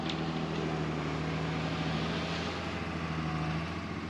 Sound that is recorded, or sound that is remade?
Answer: recorded